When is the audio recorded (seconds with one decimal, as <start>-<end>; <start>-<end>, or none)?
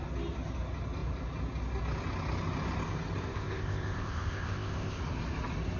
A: 0.0-3.3; 5.0-5.8